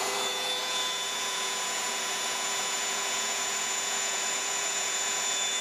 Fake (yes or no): yes